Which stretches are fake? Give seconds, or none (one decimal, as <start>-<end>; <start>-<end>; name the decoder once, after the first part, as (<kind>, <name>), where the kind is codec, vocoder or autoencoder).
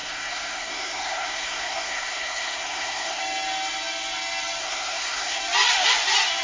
0.0-3.2 (codec, SNAC); 4.6-5.4